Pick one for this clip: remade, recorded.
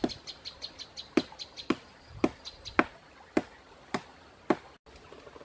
recorded